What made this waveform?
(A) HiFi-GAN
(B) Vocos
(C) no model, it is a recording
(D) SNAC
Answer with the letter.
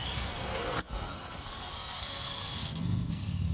D